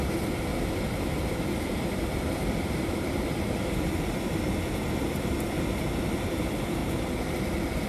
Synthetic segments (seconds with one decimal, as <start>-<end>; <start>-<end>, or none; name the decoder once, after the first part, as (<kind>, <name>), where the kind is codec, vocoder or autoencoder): 0.0-0.5 (vocoder, BigVGAN v2); 1.6-6.8